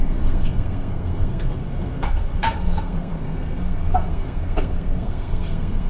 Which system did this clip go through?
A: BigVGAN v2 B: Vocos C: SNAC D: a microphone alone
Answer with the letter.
C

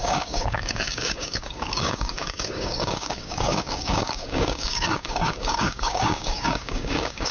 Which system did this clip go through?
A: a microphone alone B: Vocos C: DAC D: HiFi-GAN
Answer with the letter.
C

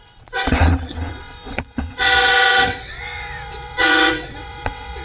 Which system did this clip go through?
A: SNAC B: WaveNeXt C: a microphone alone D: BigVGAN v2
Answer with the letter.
B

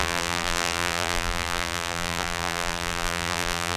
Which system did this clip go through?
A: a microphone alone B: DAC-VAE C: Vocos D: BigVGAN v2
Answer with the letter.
D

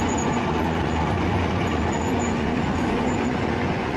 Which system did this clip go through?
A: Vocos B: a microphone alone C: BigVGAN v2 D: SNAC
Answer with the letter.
A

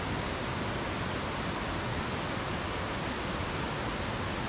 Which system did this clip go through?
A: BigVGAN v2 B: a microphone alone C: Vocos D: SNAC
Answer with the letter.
B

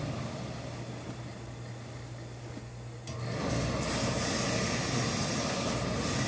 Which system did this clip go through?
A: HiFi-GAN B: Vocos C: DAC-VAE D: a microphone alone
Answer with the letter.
D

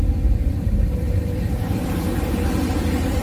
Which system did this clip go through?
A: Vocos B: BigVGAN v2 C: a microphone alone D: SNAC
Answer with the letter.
B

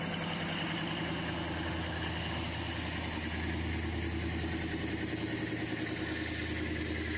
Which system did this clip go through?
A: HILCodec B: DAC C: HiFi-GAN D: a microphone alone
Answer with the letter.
D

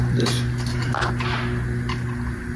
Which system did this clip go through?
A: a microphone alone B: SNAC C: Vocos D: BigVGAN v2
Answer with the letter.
A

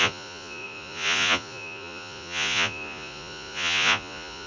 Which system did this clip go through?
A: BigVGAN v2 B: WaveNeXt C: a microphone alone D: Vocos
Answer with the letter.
D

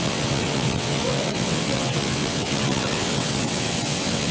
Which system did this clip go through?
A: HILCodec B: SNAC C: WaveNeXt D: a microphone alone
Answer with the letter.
C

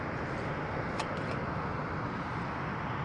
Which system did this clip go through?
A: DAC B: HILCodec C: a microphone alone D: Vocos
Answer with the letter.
C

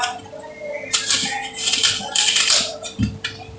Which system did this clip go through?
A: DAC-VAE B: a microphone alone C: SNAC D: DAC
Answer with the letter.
B